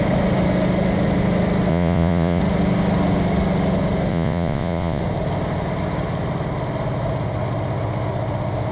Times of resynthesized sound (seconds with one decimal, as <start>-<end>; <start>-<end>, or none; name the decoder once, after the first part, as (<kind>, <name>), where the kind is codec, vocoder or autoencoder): 1.7-2.4 (vocoder, Vocos); 4.1-5.0